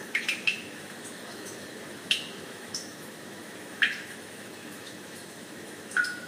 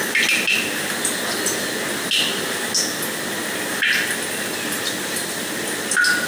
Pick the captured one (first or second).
second